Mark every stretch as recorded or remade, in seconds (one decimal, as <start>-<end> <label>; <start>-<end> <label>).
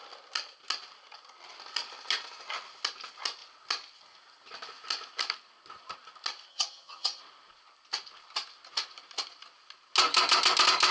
0.0-6.5 recorded; 6.5-7.2 remade; 7.2-10.9 recorded